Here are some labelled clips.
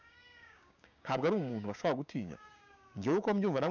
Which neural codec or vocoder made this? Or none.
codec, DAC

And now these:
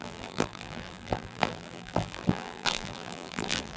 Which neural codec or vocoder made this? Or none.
vocoder, BigVGAN v2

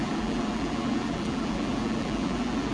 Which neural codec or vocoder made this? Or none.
vocoder, BigVGAN v2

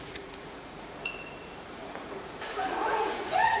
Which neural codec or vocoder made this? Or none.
vocoder, Vocos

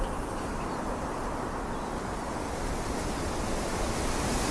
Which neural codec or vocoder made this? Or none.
none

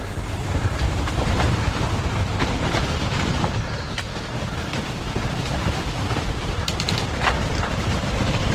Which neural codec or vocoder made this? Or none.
vocoder, BigVGAN v2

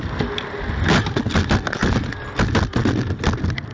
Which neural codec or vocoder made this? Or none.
none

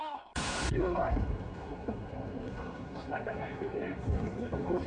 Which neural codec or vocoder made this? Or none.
codec, SNAC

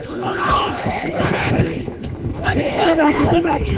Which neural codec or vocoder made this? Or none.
codec, HILCodec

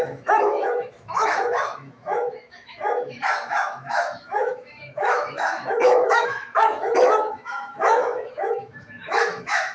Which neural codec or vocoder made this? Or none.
autoencoder, DAC-VAE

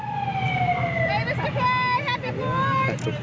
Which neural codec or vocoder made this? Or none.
none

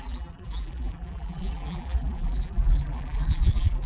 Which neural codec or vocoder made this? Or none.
vocoder, BigVGAN v2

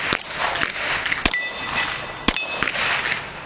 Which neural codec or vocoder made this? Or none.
none